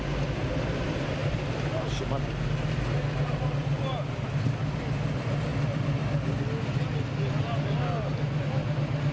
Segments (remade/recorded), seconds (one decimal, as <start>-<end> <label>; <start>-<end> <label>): 0.0-9.1 recorded